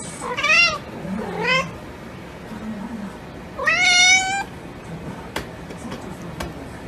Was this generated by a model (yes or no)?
no